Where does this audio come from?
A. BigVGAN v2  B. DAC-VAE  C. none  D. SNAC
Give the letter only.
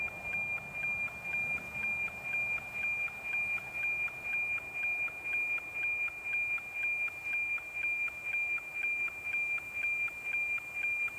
C